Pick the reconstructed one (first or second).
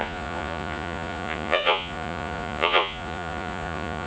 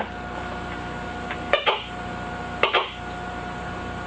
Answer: first